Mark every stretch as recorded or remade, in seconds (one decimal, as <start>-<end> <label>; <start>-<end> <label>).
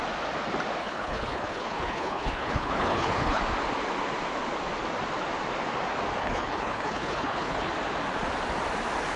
0.0-0.8 recorded; 0.8-3.4 remade; 3.4-6.2 recorded; 6.2-7.7 remade; 7.7-9.2 recorded